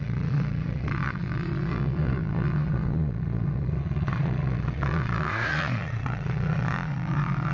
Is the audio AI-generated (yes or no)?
yes